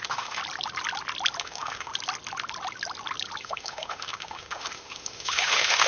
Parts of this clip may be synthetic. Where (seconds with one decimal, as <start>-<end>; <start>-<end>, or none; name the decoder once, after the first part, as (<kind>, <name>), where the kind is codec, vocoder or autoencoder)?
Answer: 0.0-0.4 (autoencoder, DAC-VAE); 1.4-1.9; 3.4-5.9